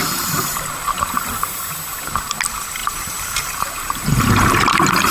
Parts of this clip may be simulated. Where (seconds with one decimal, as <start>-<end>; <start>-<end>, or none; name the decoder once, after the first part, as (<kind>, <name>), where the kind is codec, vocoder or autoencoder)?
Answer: 0.0-0.7 (vocoder, BigVGAN v2); 2.8-4.3